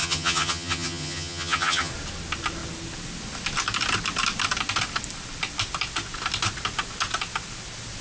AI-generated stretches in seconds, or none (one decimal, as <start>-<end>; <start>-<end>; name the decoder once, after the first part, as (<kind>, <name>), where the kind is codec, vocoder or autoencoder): 0.0-1.9 (vocoder, HiFi-GAN)